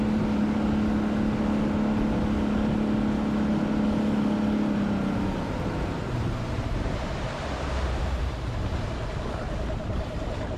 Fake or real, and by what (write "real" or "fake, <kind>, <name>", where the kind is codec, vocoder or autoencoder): real